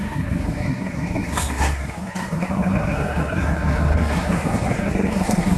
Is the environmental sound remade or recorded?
remade